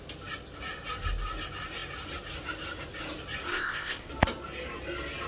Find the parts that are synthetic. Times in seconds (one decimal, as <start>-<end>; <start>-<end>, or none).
3.5-4.1